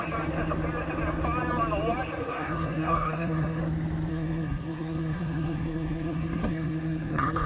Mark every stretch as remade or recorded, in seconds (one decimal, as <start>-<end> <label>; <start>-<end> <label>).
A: 0.0-2.2 recorded; 2.2-3.6 remade; 3.6-4.1 recorded; 4.1-7.5 remade